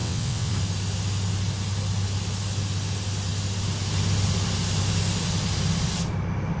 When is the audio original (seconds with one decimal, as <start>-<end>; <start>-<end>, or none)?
0.5-6.6